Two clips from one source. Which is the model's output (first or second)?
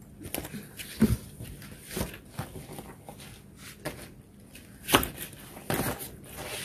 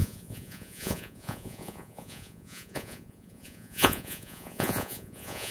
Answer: second